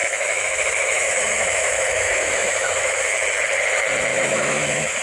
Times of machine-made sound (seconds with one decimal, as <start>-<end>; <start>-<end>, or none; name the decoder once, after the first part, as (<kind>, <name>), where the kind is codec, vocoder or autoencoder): 0.0-3.0 (autoencoder, DAC-VAE); 4.1-5.0